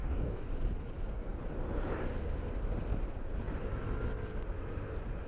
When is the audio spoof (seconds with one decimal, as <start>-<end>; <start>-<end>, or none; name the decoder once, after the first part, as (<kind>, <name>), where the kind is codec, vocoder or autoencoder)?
0.0-0.5 (codec, DAC)